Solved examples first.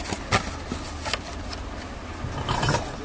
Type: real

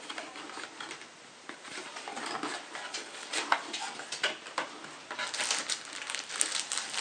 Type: real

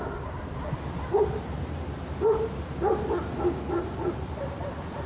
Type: real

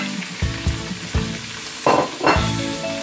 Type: real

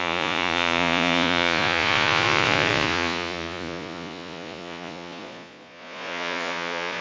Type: fake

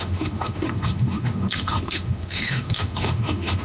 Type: fake